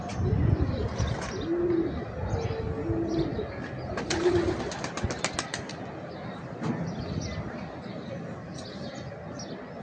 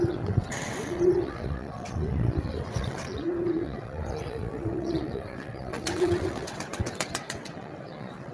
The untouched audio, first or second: first